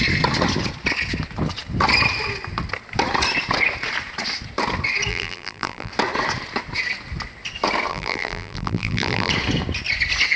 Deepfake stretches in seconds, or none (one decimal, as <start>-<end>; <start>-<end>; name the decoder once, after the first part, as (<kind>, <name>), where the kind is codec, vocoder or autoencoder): 5.1-5.9 (vocoder, BigVGAN v2); 7.9-9.3